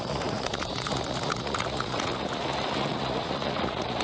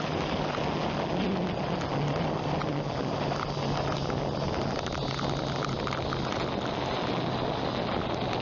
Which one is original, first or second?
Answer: second